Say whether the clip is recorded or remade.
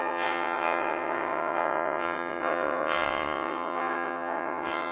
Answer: remade